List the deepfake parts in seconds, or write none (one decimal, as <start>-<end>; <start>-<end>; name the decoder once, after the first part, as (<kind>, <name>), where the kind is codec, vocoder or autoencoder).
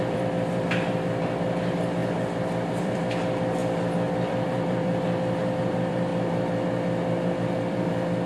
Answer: 0.0-2.0 (vocoder, BigVGAN v2); 2.7-6.1; 7.3-8.3